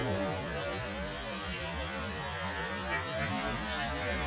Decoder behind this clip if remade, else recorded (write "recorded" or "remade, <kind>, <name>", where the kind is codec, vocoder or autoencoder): recorded